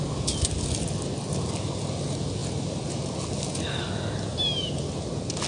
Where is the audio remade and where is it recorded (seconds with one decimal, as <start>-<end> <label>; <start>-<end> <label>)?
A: 0.0-5.5 recorded